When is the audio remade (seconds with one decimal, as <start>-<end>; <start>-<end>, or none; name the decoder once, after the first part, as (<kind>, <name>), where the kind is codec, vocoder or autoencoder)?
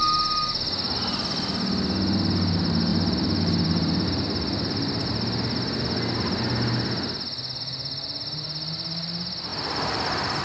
2.9-5.1 (vocoder, BigVGAN v2); 9.5-10.4